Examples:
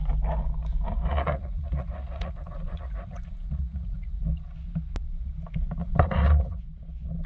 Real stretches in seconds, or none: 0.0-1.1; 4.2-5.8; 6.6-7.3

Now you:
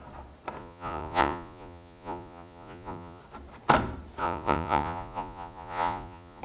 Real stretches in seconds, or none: 0.0-0.6; 3.2-4.2

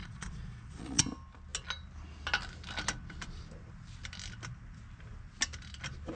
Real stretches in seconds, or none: 1.0-6.2

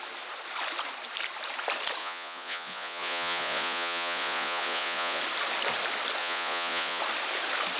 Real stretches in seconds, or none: 0.0-2.0; 5.2-6.2; 7.0-7.8

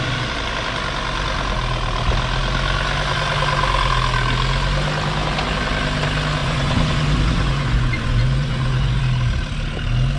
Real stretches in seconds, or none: 0.0-6.4; 9.0-10.2

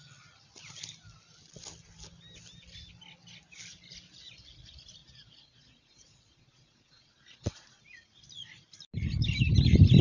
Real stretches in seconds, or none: 0.0-5.0; 7.8-10.0

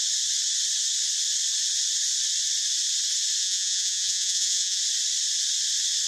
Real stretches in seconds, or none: 0.0-3.4; 4.8-6.1

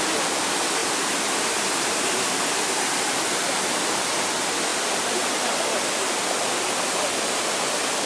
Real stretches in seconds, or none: 0.0-8.1